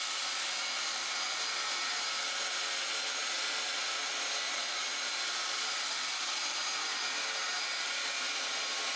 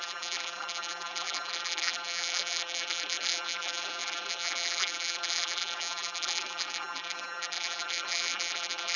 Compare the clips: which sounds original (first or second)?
first